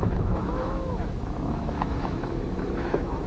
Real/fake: fake